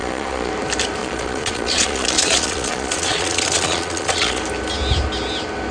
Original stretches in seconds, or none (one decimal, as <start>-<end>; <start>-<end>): 0.5-1.0; 4.4-5.7